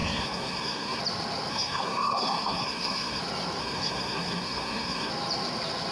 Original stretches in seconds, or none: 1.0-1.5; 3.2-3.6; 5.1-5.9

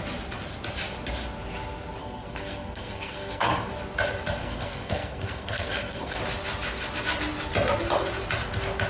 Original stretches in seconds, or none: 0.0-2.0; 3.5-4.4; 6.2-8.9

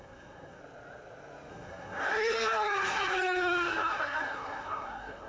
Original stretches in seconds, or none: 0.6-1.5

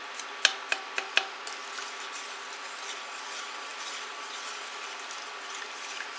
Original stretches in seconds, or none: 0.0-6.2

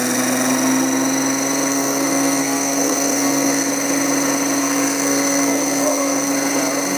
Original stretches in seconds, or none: 0.0-1.7; 3.7-4.6; 6.3-7.0

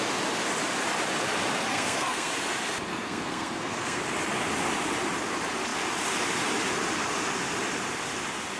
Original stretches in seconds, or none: 0.0-1.7; 2.3-2.9; 4.0-8.6